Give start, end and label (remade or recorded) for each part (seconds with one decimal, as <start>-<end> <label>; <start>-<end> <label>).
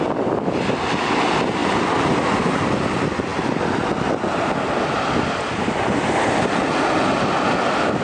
0.0-8.0 recorded